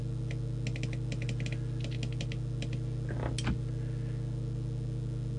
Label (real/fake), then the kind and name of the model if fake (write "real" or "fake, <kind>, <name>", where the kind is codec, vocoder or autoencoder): real